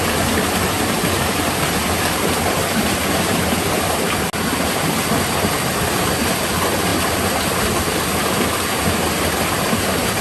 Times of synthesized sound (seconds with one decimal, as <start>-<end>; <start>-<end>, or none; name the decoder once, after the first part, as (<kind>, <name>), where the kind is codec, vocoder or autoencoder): none